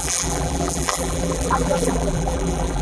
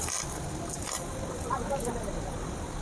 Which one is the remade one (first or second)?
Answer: first